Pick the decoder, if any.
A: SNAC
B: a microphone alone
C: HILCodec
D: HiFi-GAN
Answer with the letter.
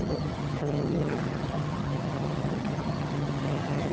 D